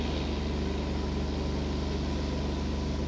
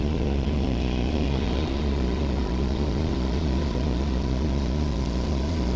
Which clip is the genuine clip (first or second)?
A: first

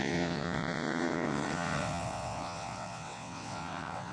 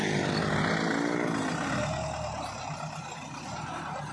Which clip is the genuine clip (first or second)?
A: second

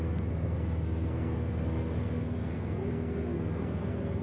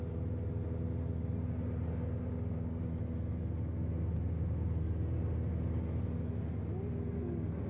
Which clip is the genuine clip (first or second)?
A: second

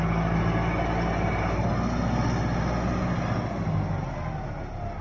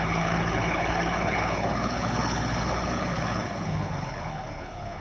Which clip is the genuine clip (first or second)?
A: first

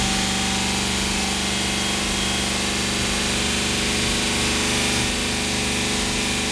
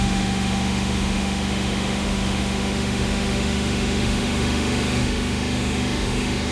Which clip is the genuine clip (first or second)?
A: first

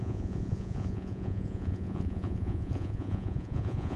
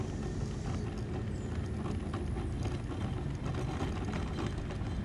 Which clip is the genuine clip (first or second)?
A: second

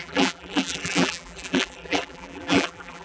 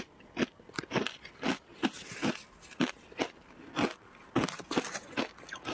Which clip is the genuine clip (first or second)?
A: second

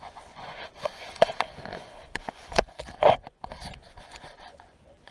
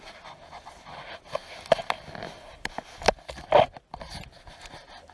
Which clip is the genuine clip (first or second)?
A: second